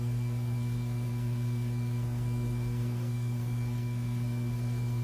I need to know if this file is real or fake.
fake